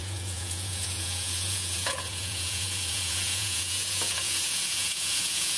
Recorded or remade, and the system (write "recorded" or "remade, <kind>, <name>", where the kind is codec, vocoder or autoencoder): remade, vocoder, Vocos